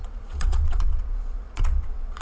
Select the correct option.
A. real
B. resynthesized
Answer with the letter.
B